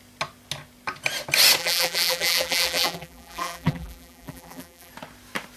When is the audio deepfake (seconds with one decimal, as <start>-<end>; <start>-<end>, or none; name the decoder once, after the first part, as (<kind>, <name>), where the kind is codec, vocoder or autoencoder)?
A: 1.6-4.9 (vocoder, BigVGAN v2)